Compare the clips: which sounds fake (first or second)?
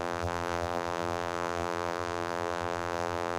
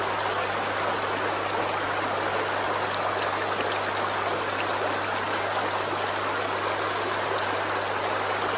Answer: first